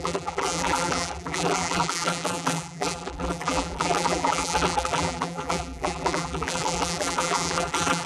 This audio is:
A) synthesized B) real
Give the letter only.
A